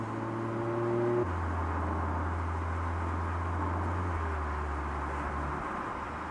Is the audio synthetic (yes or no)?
no